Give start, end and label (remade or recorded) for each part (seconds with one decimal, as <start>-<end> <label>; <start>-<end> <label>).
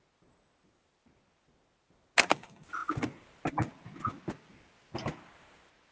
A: 0.0-5.9 recorded